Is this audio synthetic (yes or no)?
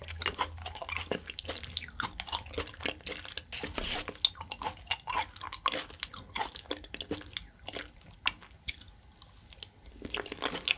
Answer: no